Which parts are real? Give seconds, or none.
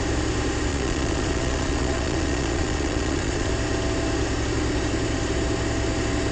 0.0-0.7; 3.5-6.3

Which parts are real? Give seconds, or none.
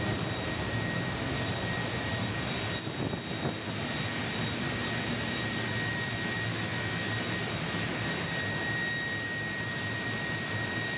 0.0-6.5; 7.1-11.0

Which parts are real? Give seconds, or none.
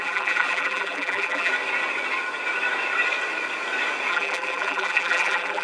1.5-4.1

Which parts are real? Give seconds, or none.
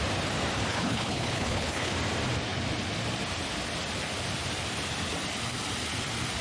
0.0-0.7; 1.9-6.4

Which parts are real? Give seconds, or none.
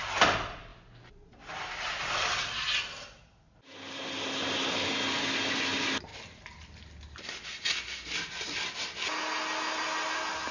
0.0-10.5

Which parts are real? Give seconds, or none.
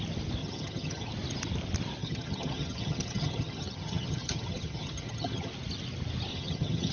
0.0-0.4; 1.1-2.0; 5.5-6.3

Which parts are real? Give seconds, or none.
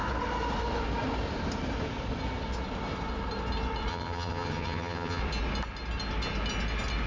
0.0-3.9; 5.2-7.1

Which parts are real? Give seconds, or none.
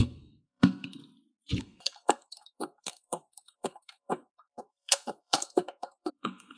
1.0-1.6